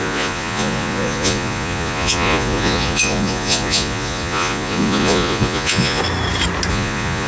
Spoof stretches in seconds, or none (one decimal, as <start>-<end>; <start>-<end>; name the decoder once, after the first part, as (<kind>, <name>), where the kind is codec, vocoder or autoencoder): 0.0-6.0 (vocoder, Vocos); 6.7-7.3